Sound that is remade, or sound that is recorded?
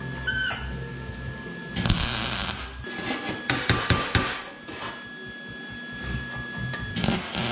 recorded